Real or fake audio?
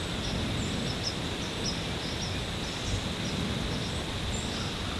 real